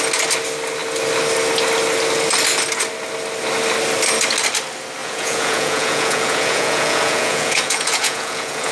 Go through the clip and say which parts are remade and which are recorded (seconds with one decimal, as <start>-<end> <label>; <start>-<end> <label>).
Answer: 0.0-5.0 recorded; 5.0-8.7 remade